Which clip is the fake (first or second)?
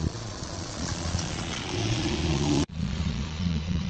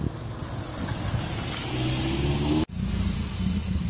first